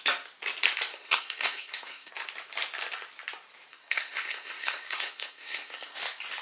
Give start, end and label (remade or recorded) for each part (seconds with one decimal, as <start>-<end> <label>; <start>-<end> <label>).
0.0-0.9 recorded; 0.9-2.1 remade; 2.1-3.7 recorded; 3.7-6.0 remade; 6.0-6.4 recorded